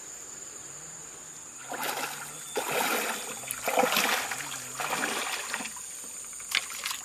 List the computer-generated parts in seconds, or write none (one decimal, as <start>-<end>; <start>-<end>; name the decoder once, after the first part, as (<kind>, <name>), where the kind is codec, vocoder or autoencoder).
none